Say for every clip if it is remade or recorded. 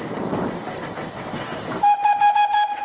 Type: recorded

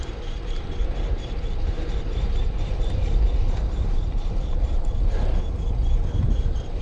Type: remade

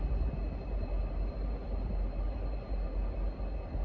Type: recorded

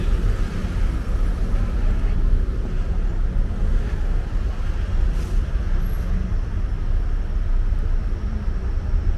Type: recorded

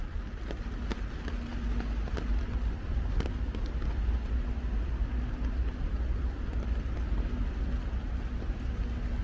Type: recorded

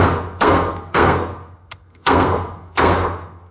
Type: remade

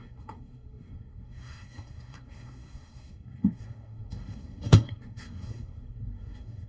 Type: remade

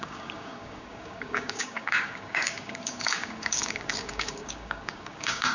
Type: remade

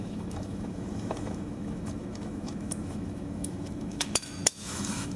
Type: remade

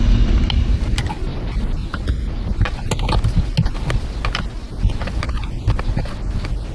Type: recorded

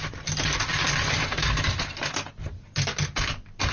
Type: recorded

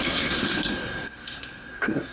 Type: remade